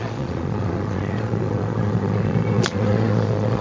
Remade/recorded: remade